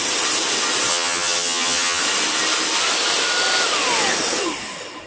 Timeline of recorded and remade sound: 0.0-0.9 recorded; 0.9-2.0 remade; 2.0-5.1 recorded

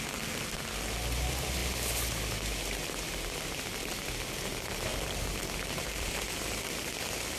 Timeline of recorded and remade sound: 0.0-4.9 recorded; 4.9-6.3 remade; 6.3-7.4 recorded

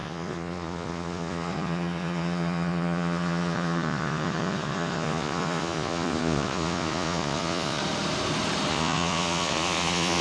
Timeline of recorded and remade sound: 0.0-7.8 remade; 7.8-8.7 recorded; 8.7-10.2 remade

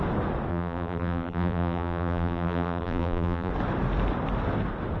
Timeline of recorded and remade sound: 0.0-0.5 recorded; 0.5-3.5 remade; 3.5-5.0 recorded

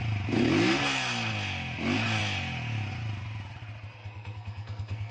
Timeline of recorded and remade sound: 0.0-4.0 recorded; 4.0-5.1 remade

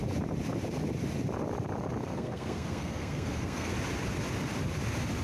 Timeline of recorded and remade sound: 0.0-2.1 recorded; 2.1-3.7 remade; 3.7-5.2 recorded